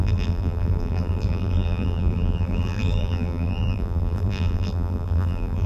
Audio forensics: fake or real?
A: fake